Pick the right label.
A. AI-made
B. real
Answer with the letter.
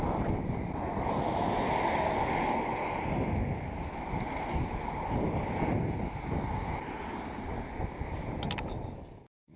B